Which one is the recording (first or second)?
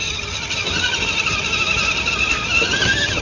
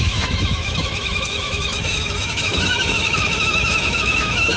first